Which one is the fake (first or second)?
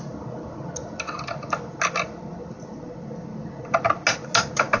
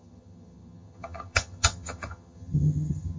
second